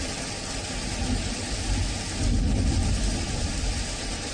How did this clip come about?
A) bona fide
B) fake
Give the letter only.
A